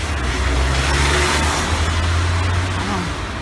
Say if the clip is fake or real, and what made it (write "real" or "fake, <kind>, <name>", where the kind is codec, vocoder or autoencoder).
real